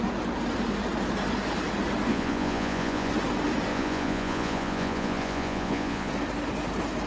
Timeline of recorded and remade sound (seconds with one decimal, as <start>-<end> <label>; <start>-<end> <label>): 0.0-2.1 recorded; 2.1-3.1 remade; 3.1-3.7 recorded; 3.7-6.1 remade; 6.1-7.1 recorded